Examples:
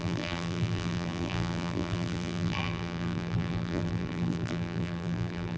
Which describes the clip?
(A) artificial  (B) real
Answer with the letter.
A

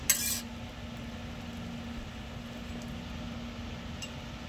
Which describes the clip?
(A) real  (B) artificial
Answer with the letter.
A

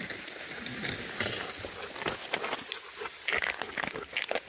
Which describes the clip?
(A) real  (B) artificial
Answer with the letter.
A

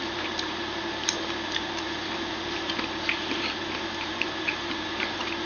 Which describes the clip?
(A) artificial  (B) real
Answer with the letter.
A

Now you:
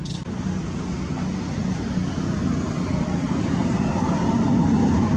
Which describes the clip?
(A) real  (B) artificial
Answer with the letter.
A